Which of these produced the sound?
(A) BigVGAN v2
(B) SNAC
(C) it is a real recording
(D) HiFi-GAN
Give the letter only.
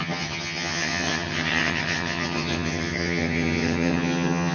D